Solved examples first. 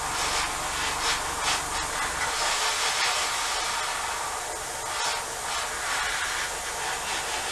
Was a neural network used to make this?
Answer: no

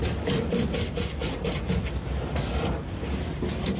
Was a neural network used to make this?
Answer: no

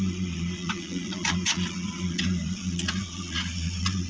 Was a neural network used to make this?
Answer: yes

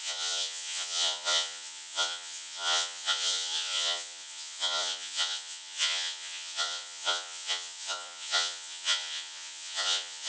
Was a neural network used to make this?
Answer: yes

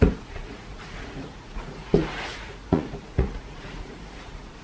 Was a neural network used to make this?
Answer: yes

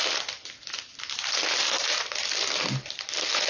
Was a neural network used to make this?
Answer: no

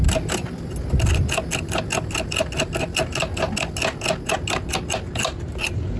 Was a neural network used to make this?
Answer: no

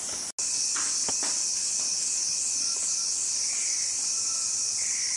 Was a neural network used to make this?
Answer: no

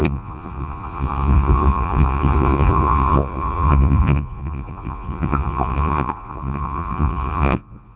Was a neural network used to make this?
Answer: yes